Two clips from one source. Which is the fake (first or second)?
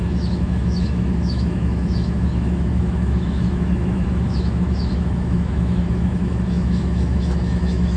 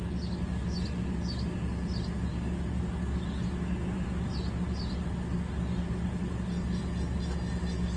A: first